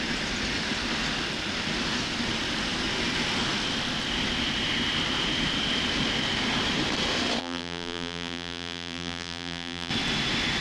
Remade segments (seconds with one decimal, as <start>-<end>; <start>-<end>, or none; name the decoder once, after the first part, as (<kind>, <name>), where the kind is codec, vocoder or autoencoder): 7.4-9.9 (vocoder, BigVGAN v2)